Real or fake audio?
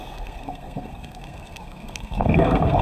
fake